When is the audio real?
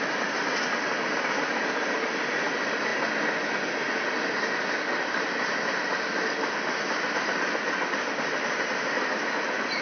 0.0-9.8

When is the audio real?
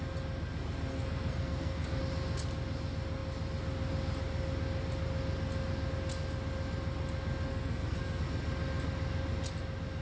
0.0-0.9; 2.0-7.5; 8.2-10.0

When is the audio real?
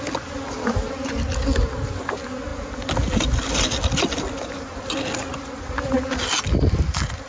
0.0-7.3